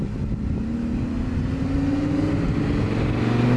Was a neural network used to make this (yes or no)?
no